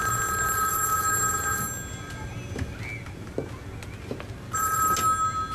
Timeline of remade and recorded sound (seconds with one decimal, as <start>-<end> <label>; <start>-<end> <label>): 0.0-5.5 recorded